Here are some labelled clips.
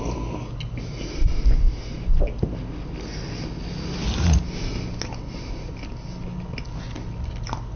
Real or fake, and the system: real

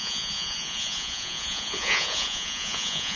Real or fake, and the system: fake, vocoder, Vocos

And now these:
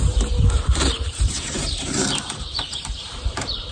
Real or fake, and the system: fake, vocoder, BigVGAN v2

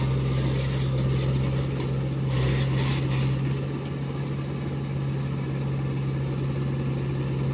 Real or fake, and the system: real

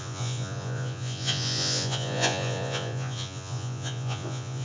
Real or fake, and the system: fake, vocoder, Vocos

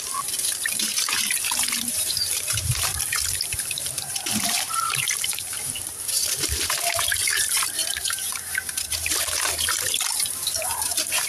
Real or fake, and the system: fake, vocoder, BigVGAN v2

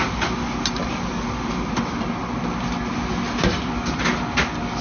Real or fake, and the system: real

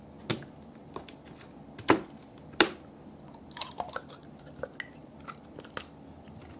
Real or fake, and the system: real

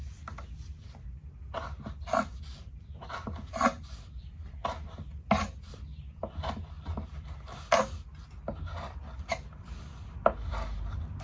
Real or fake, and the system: real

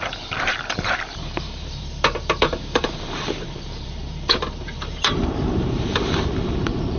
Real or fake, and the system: fake, vocoder, BigVGAN v2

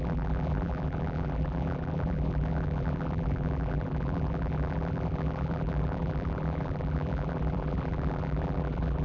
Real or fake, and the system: fake, vocoder, BigVGAN v2